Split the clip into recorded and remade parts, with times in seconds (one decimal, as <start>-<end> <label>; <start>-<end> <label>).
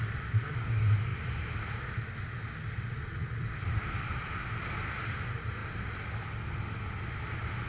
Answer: 0.0-7.7 recorded